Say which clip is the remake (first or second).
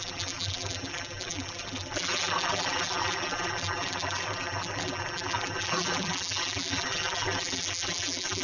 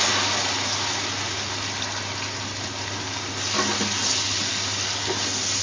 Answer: first